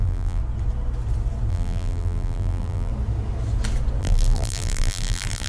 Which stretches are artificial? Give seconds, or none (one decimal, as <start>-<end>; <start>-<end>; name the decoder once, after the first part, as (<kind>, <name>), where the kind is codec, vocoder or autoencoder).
0.0-0.4 (vocoder, BigVGAN v2); 1.5-2.9; 4.0-5.5